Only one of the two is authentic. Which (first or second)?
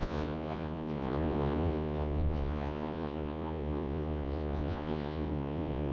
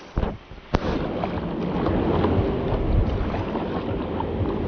second